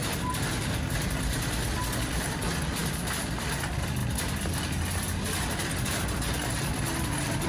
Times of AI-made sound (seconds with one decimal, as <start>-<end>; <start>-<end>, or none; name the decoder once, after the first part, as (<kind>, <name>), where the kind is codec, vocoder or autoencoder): none